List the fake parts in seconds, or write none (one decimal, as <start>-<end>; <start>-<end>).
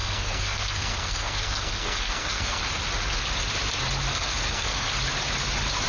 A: 0.0-2.6; 4.1-5.0